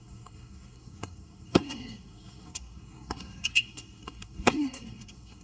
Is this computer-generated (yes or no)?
yes